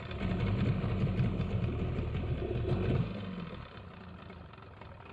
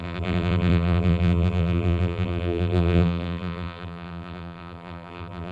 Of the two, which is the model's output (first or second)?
second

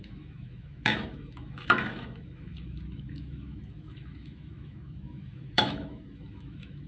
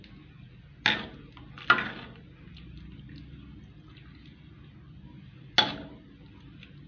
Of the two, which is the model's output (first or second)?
first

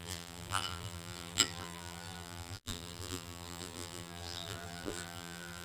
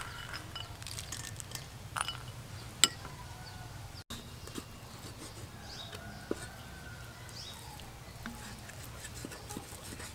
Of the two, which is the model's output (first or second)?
first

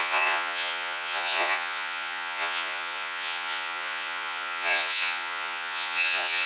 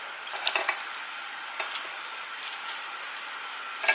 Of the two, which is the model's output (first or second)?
first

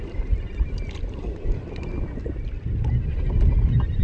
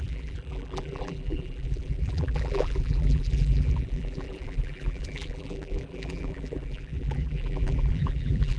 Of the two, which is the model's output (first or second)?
second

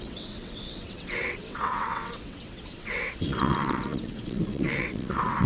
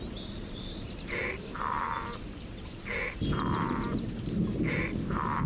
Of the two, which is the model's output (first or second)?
first